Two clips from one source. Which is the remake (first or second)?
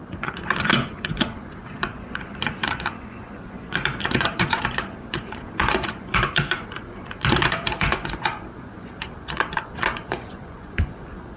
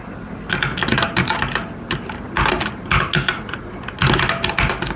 first